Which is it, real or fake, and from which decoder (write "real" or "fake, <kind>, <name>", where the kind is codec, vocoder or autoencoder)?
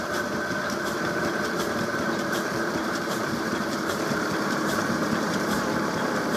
fake, vocoder, BigVGAN v2